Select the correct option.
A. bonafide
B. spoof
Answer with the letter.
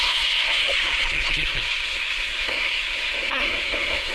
B